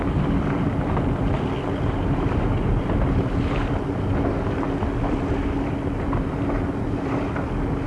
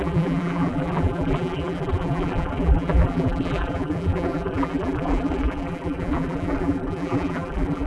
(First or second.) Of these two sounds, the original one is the first